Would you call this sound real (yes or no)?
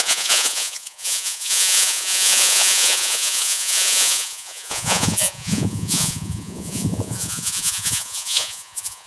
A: no